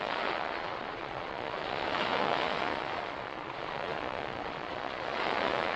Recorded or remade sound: remade